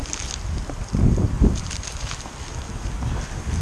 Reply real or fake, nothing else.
real